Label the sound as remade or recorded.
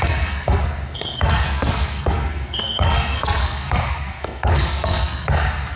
remade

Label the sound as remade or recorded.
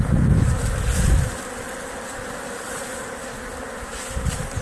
recorded